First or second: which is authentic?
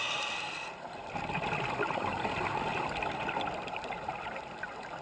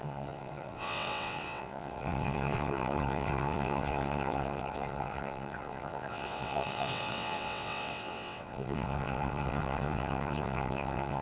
first